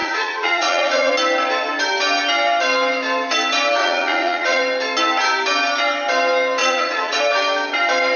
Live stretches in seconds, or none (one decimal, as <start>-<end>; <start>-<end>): 1.1-3.8; 4.6-6.6; 7.2-8.2